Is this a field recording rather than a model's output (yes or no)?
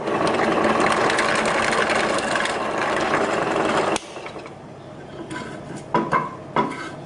yes